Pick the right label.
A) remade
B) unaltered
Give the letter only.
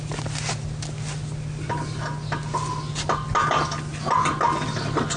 B